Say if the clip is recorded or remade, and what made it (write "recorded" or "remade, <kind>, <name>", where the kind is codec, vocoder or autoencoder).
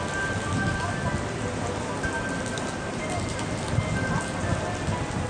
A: recorded